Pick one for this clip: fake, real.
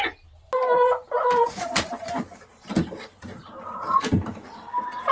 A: real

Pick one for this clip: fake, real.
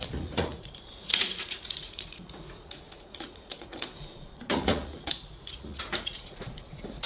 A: fake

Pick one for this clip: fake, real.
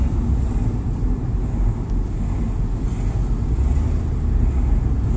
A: real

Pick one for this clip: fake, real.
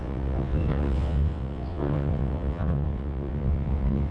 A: fake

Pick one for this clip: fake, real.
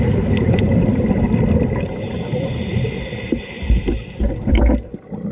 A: real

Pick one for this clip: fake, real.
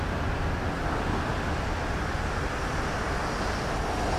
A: real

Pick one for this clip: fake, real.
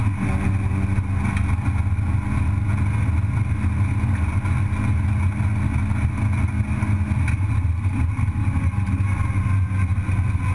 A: real